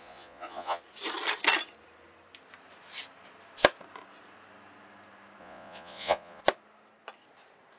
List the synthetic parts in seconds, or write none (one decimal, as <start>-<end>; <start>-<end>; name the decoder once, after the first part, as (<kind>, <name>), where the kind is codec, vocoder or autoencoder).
0.0-0.8 (vocoder, Vocos); 5.4-6.4